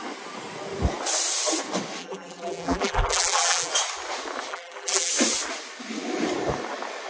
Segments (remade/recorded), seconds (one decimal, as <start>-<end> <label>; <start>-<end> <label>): 0.0-2.0 recorded; 2.0-3.7 remade; 3.7-4.5 recorded; 4.5-5.1 remade; 5.1-7.1 recorded